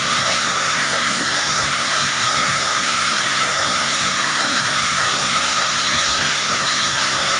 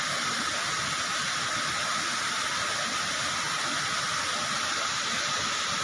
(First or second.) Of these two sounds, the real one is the second